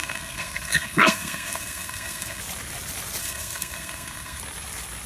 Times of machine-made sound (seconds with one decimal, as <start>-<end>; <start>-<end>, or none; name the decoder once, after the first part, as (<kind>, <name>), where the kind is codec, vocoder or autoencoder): 0.0-2.4 (codec, SNAC); 3.2-4.4